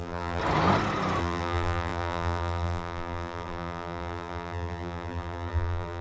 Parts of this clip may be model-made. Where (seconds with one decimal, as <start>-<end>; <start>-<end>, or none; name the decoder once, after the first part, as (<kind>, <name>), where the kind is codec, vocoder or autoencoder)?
0.0-0.4 (vocoder, BigVGAN v2); 1.2-6.0